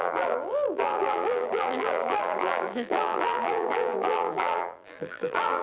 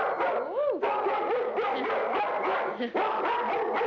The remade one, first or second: first